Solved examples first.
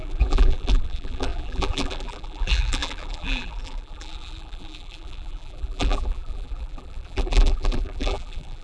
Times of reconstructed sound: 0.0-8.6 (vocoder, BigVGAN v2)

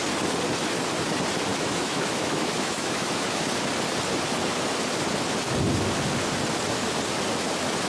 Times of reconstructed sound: 1.5-3.4 (autoencoder, DAC-VAE)

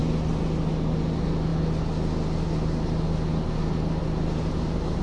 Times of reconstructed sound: none

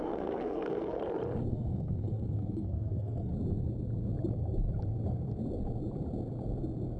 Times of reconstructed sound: 0.0-1.0 (codec, SNAC); 1.5-3.3

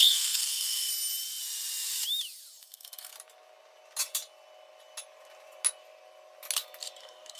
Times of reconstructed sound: 0.0-0.9 (codec, SNAC); 2.6-3.1; 7.0-7.4